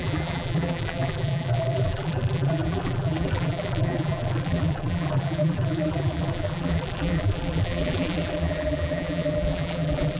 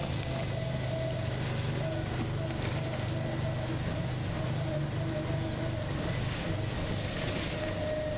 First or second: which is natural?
second